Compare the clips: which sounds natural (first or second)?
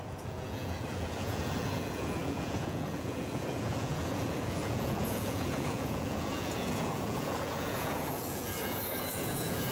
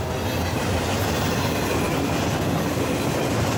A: second